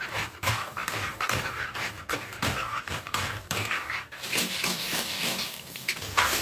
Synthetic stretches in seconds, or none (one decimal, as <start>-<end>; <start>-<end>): 0.0-6.4